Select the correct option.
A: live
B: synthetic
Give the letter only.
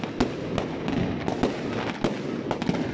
A